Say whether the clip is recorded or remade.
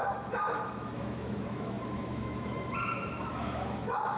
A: remade